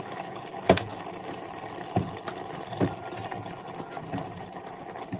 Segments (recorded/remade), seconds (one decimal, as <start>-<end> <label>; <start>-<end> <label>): 0.0-5.2 recorded